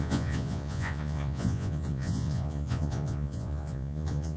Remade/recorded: remade